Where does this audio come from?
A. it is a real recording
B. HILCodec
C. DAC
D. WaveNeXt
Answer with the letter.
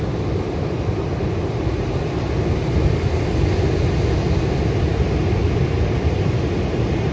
A